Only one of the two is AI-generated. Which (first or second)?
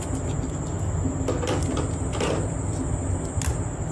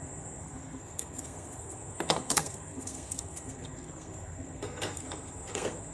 second